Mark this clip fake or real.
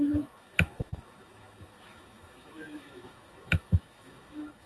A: fake